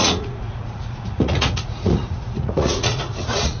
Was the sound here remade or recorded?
remade